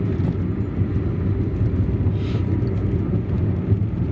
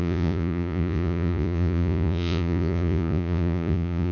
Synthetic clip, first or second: second